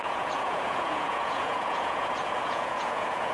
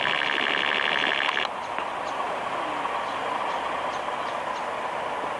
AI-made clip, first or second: first